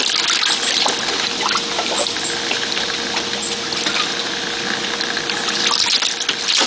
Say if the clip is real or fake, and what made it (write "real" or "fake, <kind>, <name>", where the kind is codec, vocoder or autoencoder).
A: real